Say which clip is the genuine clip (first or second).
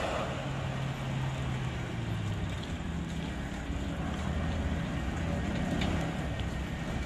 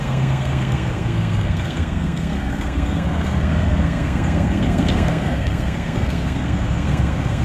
first